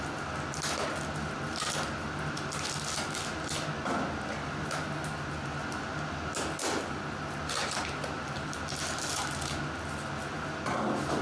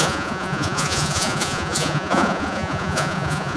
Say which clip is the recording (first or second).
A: first